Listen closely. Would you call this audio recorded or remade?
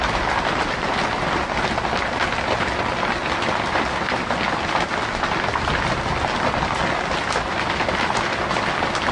recorded